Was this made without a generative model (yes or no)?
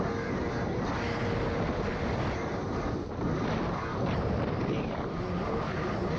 yes